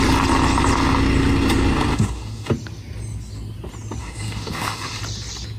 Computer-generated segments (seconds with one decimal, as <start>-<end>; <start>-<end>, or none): 1.9-2.5; 4.0-5.0